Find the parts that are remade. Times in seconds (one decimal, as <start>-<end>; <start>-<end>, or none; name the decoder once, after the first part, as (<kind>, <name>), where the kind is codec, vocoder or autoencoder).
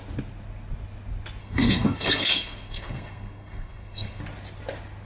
1.4-4.2 (codec, SNAC)